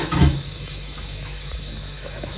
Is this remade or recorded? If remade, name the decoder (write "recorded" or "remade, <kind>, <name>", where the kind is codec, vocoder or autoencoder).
remade, autoencoder, DAC-VAE